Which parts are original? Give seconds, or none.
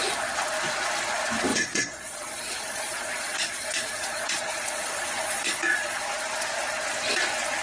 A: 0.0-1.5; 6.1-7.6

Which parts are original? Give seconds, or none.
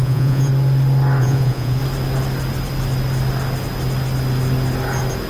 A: 0.5-1.2; 1.8-5.3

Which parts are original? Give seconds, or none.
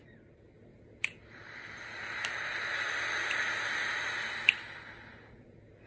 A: 0.0-0.7; 1.2-5.1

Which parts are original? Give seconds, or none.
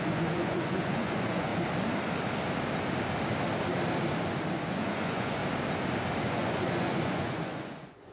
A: 1.5-4.5; 5.4-6.2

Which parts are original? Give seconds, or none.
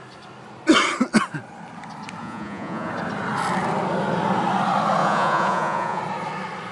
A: 0.0-2.2; 2.9-5.0; 6.0-6.7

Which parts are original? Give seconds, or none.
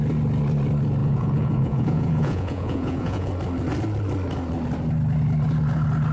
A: 0.0-1.0; 3.3-6.1